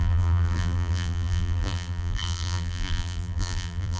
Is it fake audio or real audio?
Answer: fake